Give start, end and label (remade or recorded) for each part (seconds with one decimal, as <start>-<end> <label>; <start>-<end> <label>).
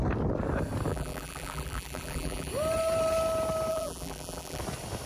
0.0-0.9 recorded; 0.9-2.5 remade; 2.5-3.7 recorded; 3.7-4.6 remade; 4.6-5.1 recorded